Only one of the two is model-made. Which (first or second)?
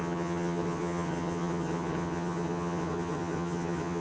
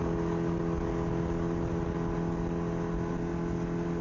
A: first